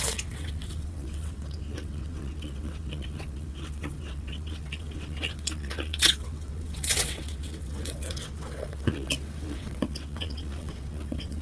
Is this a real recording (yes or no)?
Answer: no